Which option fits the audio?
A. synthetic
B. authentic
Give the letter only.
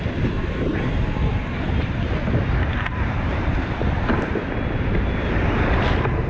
B